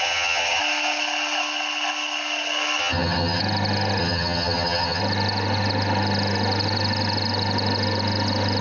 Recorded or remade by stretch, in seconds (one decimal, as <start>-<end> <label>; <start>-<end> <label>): 0.0-0.6 remade; 0.6-2.8 recorded; 2.8-3.4 remade; 3.4-4.0 recorded; 4.0-5.0 remade; 5.0-8.6 recorded